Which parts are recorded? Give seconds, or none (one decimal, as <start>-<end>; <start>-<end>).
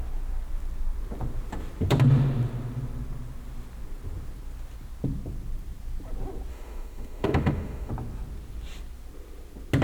0.0-6.5; 7.9-9.8